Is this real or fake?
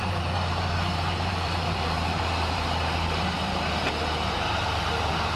fake